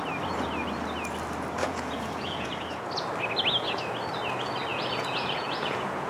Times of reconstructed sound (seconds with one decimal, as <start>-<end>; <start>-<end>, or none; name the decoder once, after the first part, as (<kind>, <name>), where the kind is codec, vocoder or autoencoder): 1.6-2.9 (vocoder, Vocos); 4.7-6.1